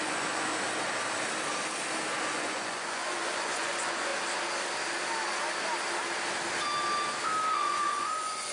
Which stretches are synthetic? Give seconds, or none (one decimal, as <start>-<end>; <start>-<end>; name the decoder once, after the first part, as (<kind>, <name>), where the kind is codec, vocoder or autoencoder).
0.0-0.5 (vocoder, Vocos); 2.2-4.1; 7.5-8.5